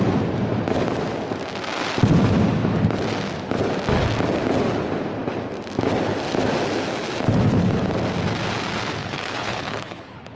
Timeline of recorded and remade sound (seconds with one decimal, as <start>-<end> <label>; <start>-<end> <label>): 0.0-9.0 recorded; 9.0-10.4 remade